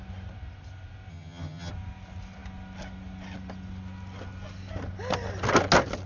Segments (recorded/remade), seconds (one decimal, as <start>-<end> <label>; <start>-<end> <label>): 0.0-1.1 recorded; 1.1-1.7 remade; 1.7-6.1 recorded